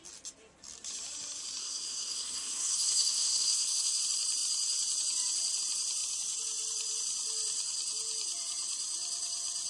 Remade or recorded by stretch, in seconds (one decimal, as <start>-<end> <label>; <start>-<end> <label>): 0.0-1.6 recorded; 1.6-4.0 remade; 4.0-9.7 recorded